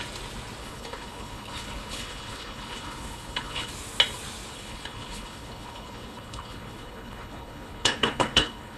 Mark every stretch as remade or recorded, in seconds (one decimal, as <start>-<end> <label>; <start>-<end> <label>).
0.0-0.6 recorded; 0.6-3.7 remade; 3.7-4.5 recorded; 4.5-8.8 remade